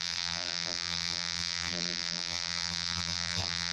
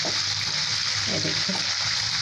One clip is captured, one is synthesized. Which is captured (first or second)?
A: second